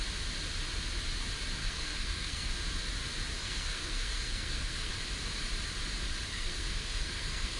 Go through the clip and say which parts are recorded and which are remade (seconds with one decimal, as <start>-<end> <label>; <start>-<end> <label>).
0.0-1.6 recorded; 1.6-2.5 remade; 2.5-3.3 recorded; 3.3-4.9 remade; 4.9-6.3 recorded; 6.3-7.6 remade